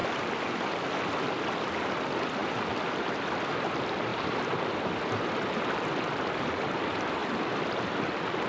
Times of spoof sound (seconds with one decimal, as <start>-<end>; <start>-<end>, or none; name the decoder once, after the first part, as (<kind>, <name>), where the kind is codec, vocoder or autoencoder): none